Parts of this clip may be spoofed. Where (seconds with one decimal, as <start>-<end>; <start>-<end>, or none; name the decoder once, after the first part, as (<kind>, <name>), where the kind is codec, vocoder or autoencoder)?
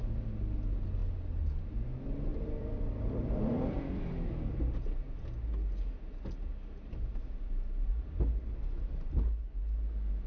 2.3-4.3 (vocoder, BigVGAN v2)